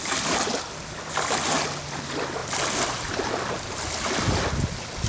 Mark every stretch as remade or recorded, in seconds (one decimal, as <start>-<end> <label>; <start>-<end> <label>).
0.0-5.1 recorded